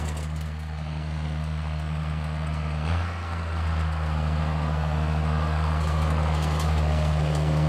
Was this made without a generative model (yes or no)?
no